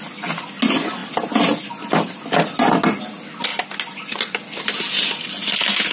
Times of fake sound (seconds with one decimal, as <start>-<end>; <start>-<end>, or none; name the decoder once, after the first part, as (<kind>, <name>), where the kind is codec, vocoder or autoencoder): none